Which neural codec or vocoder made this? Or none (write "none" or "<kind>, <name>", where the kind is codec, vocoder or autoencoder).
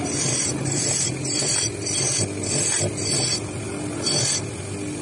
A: none